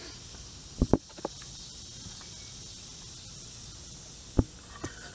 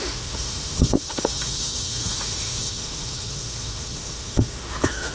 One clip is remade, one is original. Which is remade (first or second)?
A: second